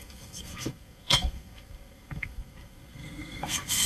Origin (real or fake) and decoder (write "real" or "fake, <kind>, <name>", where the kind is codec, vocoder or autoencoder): fake, codec, SNAC